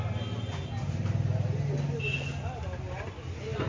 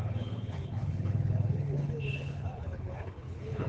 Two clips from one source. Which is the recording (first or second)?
first